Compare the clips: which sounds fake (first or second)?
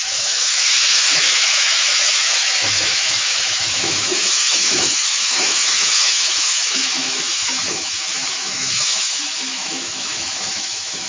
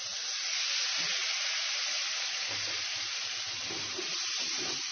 first